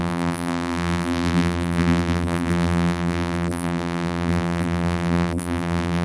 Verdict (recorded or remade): remade